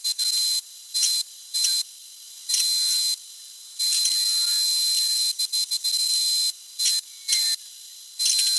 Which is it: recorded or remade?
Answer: recorded